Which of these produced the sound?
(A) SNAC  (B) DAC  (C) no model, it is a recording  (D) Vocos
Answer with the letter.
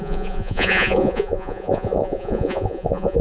D